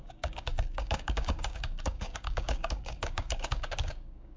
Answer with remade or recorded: remade